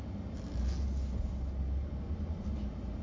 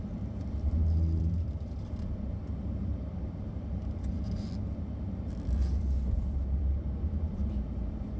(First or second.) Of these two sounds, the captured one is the first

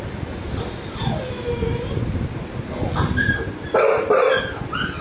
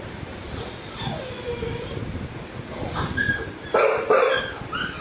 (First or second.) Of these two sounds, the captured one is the first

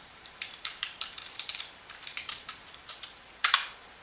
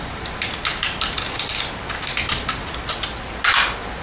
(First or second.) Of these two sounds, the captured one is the second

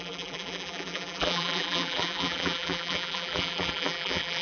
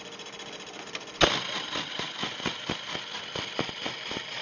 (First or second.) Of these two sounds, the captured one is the second